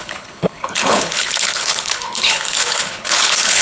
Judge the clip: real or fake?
fake